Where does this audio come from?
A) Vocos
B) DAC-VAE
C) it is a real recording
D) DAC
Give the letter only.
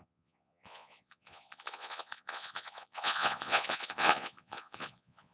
A